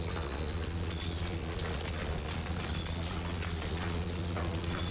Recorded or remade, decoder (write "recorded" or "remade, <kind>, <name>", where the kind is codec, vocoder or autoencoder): remade, vocoder, Vocos